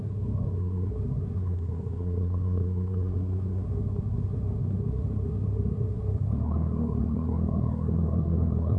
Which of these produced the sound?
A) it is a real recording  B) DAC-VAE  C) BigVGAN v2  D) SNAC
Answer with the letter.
D